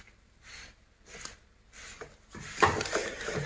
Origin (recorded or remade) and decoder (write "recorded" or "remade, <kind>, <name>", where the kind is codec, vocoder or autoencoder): recorded